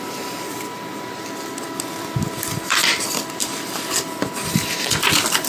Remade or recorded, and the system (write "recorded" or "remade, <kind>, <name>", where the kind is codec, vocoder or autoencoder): remade, vocoder, BigVGAN v2